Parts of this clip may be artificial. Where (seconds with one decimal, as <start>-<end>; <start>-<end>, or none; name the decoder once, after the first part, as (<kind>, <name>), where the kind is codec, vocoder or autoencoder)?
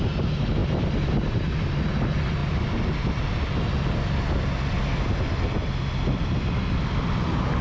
none